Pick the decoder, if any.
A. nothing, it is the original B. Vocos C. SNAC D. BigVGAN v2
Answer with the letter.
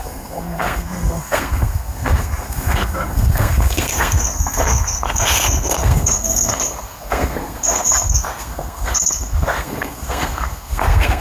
C